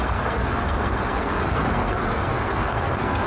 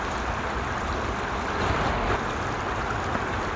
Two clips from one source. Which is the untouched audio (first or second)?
second